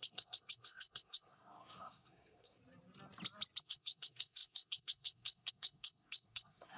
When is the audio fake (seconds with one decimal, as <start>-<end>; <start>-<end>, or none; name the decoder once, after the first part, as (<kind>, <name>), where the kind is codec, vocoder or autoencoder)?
0.0-2.6 (codec, SNAC); 3.6-6.8